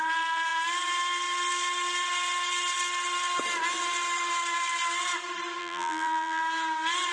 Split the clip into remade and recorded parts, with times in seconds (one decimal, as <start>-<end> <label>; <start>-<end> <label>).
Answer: 0.0-5.6 recorded; 5.6-6.4 remade; 6.4-7.1 recorded